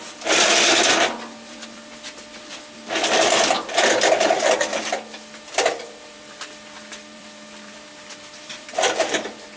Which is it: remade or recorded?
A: remade